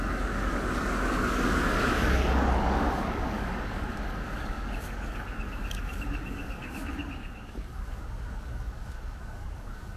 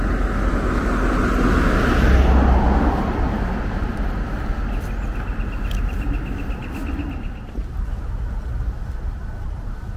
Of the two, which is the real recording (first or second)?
second